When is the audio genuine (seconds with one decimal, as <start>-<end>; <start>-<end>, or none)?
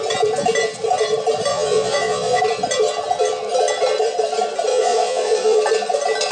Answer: 0.0-1.5; 2.4-4.7; 5.6-6.3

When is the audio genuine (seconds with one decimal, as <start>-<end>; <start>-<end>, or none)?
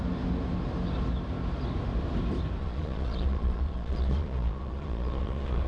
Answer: 0.0-2.6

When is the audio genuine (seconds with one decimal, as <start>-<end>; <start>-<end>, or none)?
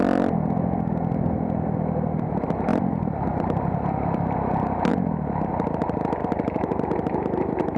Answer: 0.0-2.7; 3.7-6.2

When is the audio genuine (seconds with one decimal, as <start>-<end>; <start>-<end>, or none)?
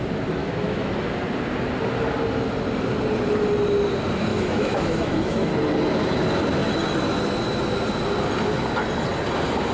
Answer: 0.0-0.4; 0.9-4.3; 5.5-9.7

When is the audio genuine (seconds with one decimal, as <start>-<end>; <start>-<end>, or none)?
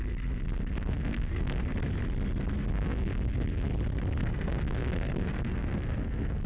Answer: 1.7-2.7; 3.7-4.2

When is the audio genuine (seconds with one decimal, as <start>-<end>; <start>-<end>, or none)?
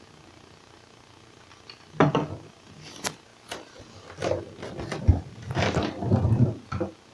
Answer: 0.0-7.1